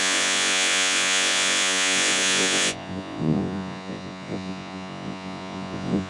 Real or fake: fake